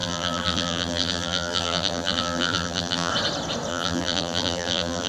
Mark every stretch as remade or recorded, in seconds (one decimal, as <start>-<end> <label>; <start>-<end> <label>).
0.0-3.1 remade; 3.1-3.7 recorded; 3.7-5.1 remade